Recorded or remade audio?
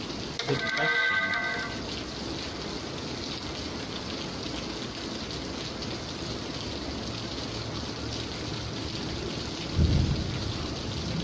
recorded